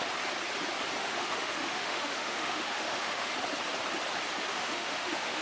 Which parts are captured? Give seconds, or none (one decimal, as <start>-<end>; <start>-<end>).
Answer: 0.0-1.0; 3.3-4.5